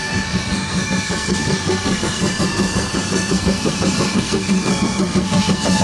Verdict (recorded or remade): remade